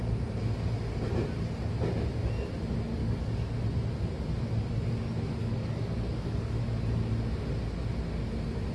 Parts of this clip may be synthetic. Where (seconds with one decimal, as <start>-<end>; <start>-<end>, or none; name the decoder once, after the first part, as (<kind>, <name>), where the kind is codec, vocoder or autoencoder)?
3.0-3.6 (codec, DAC); 5.4-6.6